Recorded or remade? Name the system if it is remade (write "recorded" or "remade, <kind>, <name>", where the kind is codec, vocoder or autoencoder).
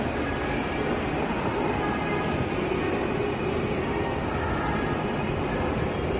recorded